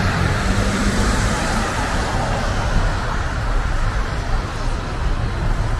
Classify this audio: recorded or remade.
remade